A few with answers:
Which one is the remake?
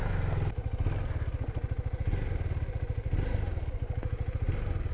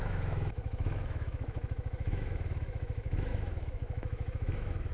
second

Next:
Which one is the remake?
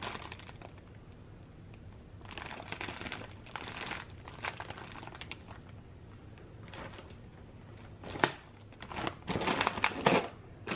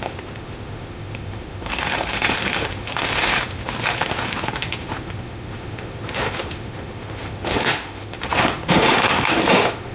second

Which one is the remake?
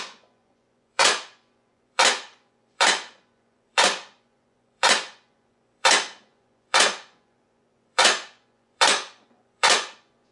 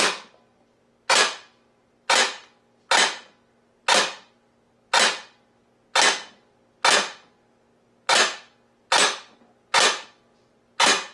first